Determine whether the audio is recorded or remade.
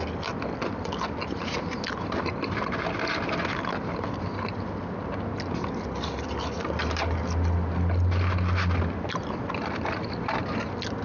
recorded